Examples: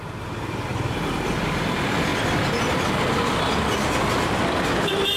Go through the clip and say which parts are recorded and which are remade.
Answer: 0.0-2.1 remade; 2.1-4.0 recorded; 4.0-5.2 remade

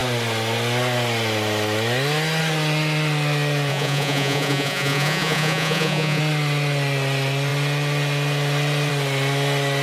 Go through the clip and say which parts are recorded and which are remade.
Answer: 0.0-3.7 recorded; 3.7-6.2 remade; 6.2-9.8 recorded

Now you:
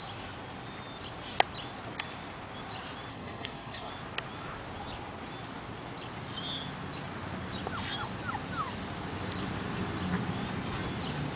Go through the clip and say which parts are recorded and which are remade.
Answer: 0.0-3.1 recorded; 3.1-3.9 remade; 3.9-11.4 recorded

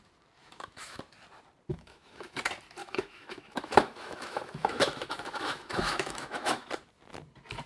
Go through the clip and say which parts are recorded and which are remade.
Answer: 0.0-0.4 recorded; 0.4-1.0 remade; 1.0-1.7 recorded; 1.7-2.4 remade; 2.4-2.8 recorded; 2.8-6.7 remade; 6.7-7.7 recorded

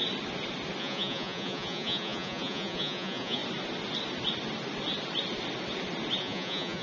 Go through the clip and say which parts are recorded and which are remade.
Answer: 0.0-0.8 recorded; 0.8-3.4 remade; 3.4-6.2 recorded; 6.2-6.8 remade

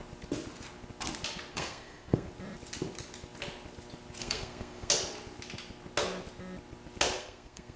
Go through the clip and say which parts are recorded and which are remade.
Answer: 0.0-1.5 recorded; 1.5-2.3 remade; 2.3-4.2 recorded; 4.2-4.9 remade; 4.9-7.2 recorded; 7.2-7.8 remade

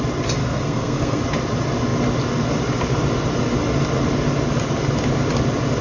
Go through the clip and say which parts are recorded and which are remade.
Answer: 0.0-0.4 recorded; 0.4-1.2 remade; 1.2-5.8 recorded

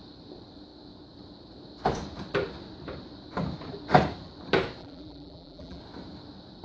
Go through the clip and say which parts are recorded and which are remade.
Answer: 0.0-4.8 recorded; 4.8-5.8 remade; 5.8-6.6 recorded